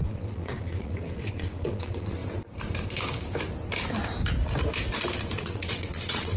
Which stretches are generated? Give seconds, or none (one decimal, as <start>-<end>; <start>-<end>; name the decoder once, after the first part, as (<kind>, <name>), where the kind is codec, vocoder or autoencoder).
0.0-2.2 (vocoder, WaveNeXt); 5.4-6.4